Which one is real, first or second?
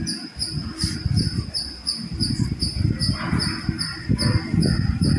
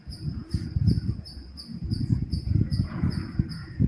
first